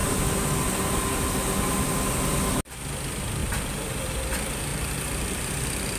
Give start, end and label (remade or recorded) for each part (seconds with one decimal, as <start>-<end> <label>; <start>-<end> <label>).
0.0-3.4 recorded; 3.4-4.1 remade; 4.1-4.7 recorded; 4.7-6.0 remade